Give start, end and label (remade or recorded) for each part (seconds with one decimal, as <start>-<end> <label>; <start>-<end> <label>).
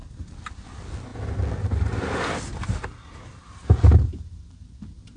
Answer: 0.0-5.2 recorded